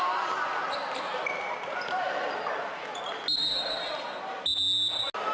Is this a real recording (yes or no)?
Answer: yes